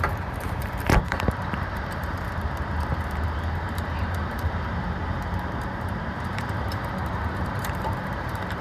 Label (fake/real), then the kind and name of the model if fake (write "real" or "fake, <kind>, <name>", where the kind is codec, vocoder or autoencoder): fake, vocoder, BigVGAN v2